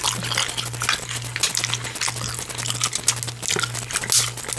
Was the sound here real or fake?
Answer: real